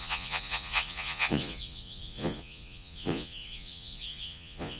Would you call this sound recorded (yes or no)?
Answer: no